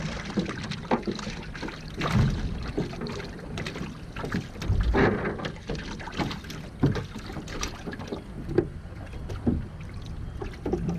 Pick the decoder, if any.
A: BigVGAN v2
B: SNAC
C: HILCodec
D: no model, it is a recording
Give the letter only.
D